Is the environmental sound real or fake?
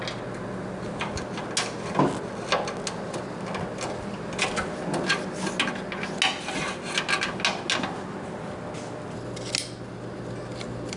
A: real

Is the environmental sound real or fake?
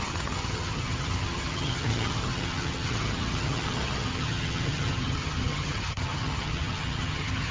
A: fake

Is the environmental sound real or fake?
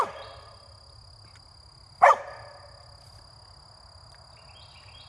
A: real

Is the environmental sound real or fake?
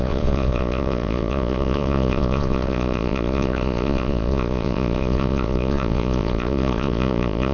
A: fake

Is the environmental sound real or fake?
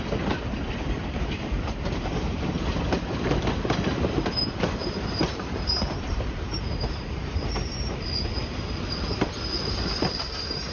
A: fake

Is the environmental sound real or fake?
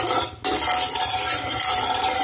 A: real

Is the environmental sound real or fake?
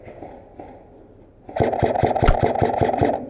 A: real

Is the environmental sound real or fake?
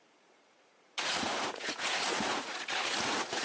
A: fake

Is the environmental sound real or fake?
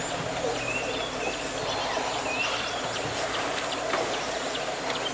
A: real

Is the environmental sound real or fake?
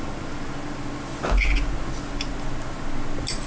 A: real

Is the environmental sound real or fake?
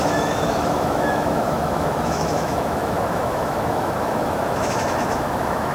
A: fake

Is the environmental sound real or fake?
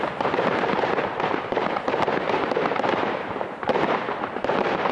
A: fake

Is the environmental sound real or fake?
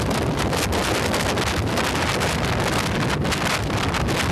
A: real